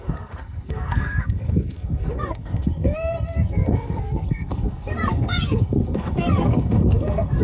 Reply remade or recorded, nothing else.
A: remade